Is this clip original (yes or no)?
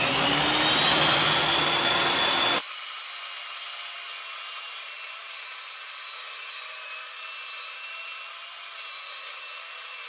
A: yes